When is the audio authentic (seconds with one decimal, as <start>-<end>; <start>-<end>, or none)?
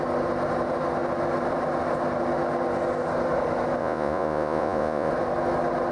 0.0-3.8; 5.1-5.9